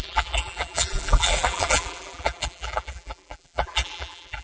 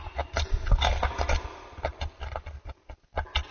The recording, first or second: second